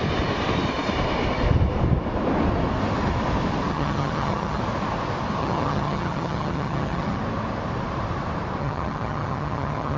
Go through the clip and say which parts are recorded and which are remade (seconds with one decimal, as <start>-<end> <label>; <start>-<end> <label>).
0.0-3.7 recorded; 3.7-4.6 remade; 4.6-5.4 recorded; 5.4-7.2 remade; 7.2-8.6 recorded; 8.6-10.0 remade